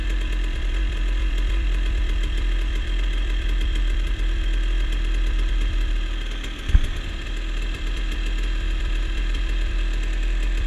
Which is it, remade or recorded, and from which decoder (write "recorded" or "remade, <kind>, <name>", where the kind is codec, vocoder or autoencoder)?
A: remade, vocoder, BigVGAN v2